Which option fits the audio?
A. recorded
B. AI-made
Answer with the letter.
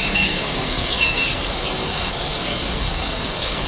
B